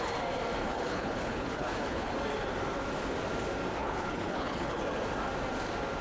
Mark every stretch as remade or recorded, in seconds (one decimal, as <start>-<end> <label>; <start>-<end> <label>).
0.0-0.6 recorded; 0.6-2.1 remade; 2.1-3.8 recorded; 3.8-4.8 remade; 4.8-6.0 recorded